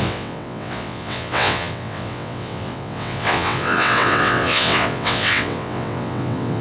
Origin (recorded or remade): remade